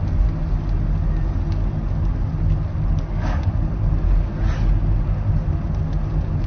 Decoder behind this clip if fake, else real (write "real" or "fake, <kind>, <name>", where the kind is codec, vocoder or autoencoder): real